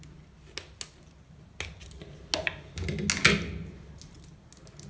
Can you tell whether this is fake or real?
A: real